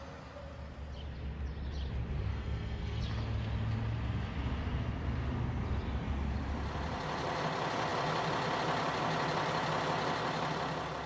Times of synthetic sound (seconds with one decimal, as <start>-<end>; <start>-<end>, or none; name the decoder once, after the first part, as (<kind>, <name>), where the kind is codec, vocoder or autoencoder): 2.3-3.0 (codec, SNAC)